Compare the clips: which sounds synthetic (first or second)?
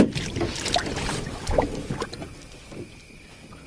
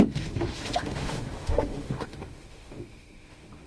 second